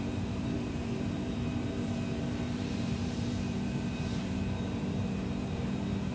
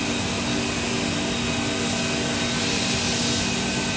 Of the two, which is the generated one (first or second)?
first